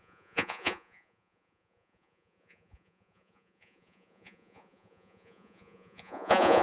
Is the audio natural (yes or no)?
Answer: no